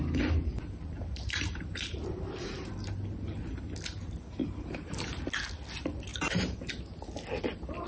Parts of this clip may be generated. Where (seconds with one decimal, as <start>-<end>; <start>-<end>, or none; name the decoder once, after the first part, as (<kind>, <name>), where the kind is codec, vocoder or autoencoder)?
0.5-2.7 (vocoder, BigVGAN v2); 4.4-5.2; 6.1-6.7